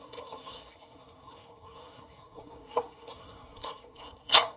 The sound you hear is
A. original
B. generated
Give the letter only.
B